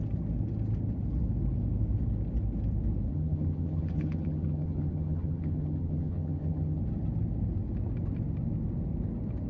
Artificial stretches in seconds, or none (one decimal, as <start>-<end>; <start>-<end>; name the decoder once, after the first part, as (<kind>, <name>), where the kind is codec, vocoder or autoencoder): 3.1-6.8 (vocoder, HiFi-GAN)